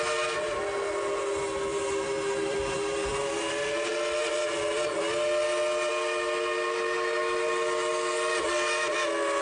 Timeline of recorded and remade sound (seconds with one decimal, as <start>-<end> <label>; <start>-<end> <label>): 0.0-1.7 recorded; 1.7-3.5 remade; 3.5-9.4 recorded